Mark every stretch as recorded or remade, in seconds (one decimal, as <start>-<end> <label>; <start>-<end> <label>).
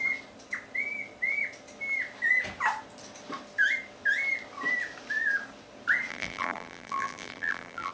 0.0-6.1 recorded; 6.1-7.9 remade